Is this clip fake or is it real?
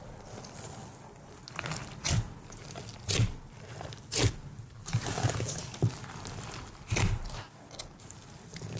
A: real